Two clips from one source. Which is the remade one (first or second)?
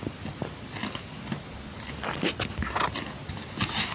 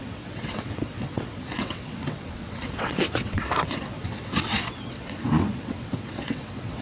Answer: second